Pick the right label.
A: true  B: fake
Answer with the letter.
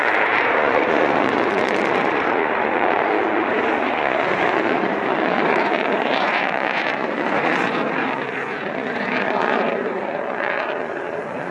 B